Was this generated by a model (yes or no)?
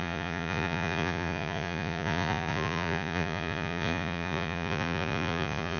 yes